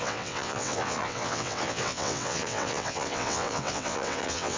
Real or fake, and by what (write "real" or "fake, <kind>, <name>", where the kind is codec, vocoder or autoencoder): fake, vocoder, WaveNeXt